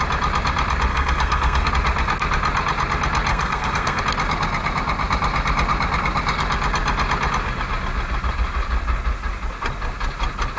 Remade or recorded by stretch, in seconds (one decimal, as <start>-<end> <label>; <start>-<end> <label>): 0.0-0.9 recorded; 0.9-1.7 remade; 1.7-3.3 recorded; 3.3-4.0 remade; 4.0-10.6 recorded